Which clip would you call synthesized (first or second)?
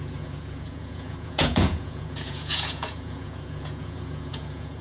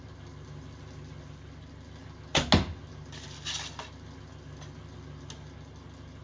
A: first